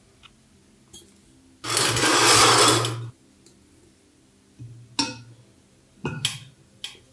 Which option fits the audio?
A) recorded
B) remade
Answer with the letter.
A